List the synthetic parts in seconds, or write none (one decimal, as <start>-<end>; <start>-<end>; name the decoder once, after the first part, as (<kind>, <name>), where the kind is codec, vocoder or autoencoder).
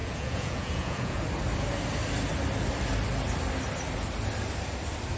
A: 0.0-1.2 (vocoder, Vocos)